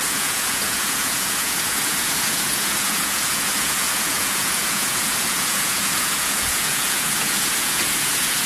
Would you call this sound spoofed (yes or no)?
yes